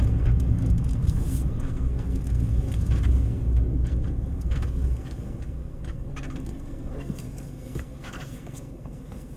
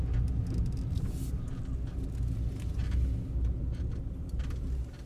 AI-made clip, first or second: first